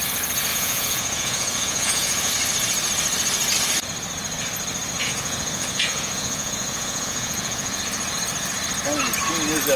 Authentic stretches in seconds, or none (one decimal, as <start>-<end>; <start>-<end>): 0.0-0.5; 2.3-5.0; 7.8-9.8